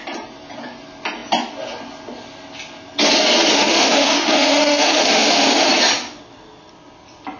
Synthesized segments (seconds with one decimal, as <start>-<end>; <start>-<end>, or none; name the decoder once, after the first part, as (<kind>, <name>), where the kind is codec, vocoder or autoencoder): 3.5-5.7 (autoencoder, DAC-VAE)